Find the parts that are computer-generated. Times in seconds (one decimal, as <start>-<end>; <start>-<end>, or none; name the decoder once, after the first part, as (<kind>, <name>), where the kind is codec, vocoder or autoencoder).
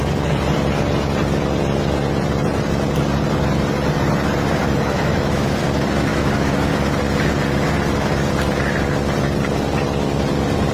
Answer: 4.6-5.6 (autoencoder, DAC-VAE); 6.1-6.7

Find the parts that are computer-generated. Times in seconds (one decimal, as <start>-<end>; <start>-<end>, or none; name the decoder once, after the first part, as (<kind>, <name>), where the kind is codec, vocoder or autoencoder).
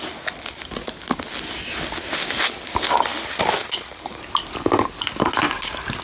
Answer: none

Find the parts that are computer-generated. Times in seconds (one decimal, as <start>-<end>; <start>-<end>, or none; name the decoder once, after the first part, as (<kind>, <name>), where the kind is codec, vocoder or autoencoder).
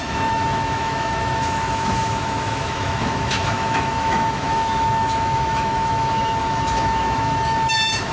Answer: 0.0-8.1 (autoencoder, DAC-VAE)